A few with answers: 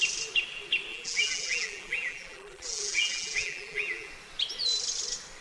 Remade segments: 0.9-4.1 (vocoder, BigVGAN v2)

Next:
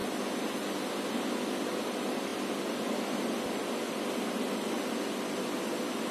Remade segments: none

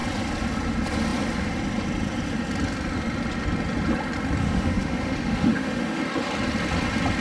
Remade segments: 4.4-6.0 (autoencoder, DAC-VAE)

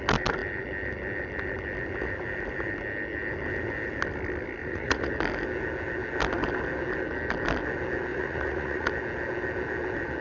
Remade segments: 4.6-5.1 (vocoder, Vocos); 8.1-8.9

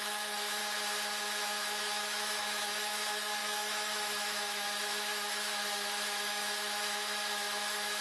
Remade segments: 0.0-0.6 (autoencoder, DAC-VAE); 1.2-8.0